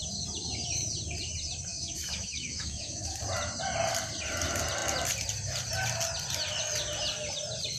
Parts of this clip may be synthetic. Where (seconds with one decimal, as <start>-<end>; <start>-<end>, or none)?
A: 1.7-3.2